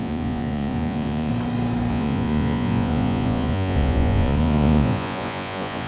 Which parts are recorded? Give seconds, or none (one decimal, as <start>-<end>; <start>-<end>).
1.3-1.9